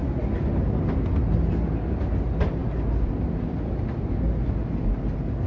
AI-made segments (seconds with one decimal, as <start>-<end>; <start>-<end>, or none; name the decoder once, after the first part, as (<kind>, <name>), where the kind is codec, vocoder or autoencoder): none